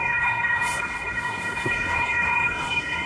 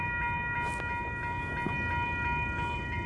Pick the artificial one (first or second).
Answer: first